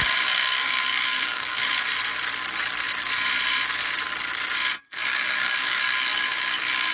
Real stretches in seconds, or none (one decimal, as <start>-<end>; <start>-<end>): 1.9-4.8